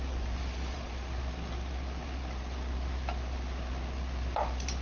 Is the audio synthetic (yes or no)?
no